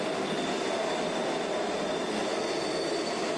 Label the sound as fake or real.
real